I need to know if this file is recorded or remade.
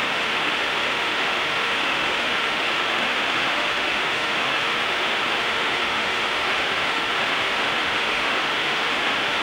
remade